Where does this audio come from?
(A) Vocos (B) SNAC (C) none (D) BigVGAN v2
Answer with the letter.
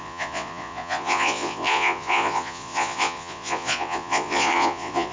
A